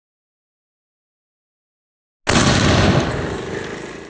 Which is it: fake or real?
real